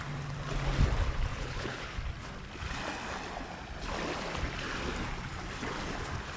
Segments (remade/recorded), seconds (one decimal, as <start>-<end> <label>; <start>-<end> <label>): 0.0-1.3 recorded; 1.3-2.0 remade; 2.0-6.4 recorded